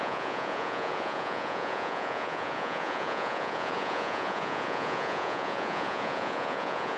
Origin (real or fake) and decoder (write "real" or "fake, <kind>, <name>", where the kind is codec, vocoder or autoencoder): fake, vocoder, Vocos